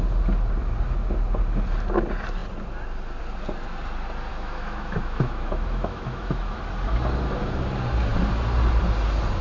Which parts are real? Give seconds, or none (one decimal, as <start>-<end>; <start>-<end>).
0.0-4.3; 6.6-9.4